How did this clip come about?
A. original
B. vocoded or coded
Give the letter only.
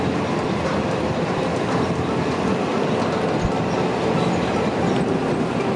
A